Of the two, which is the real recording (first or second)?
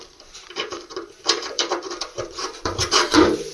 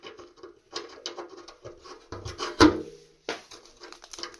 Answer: second